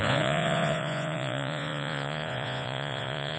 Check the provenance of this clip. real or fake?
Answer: fake